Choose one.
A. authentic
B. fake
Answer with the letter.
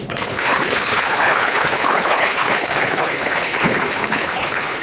B